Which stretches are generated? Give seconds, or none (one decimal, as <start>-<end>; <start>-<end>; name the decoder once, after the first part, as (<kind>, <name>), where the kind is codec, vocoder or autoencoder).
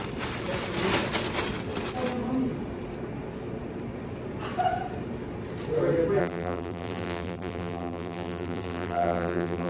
6.2-9.7 (vocoder, BigVGAN v2)